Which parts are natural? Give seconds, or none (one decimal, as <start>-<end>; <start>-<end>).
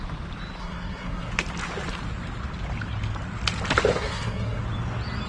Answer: 0.0-0.6; 1.3-3.9; 4.6-5.3